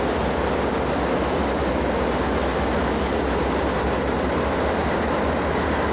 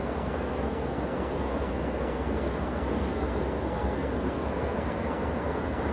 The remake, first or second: second